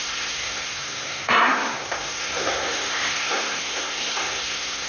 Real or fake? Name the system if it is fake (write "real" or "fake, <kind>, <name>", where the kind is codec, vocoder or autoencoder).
fake, codec, SNAC